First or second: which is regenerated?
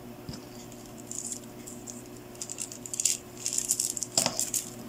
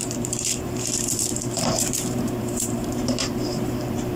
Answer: second